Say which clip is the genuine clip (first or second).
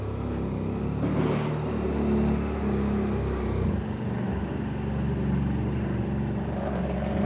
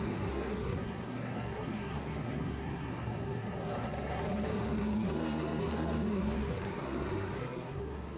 first